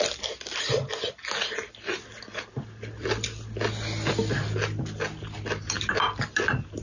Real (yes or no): yes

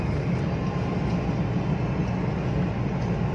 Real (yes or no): yes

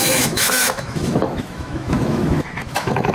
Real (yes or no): no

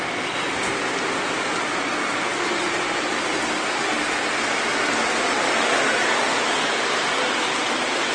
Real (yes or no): yes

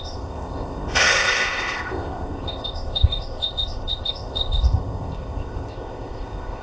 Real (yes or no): no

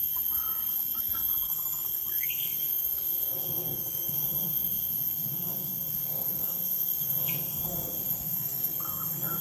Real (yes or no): no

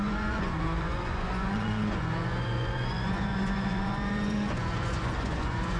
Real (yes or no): no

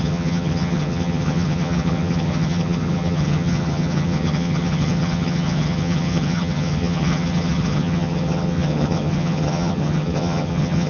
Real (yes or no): no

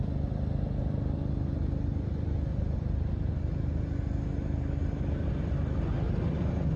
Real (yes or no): yes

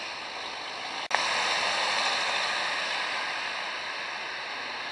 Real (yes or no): yes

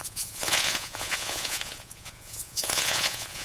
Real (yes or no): no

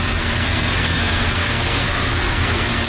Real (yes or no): no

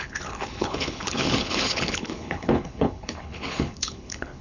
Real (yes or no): no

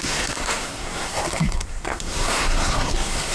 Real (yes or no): no